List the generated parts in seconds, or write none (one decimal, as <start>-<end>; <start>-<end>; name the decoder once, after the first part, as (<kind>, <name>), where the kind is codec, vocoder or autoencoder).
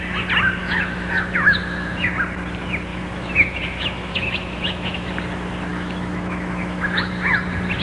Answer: 0.6-2.1 (autoencoder, DAC-VAE); 2.9-5.1; 5.7-7.1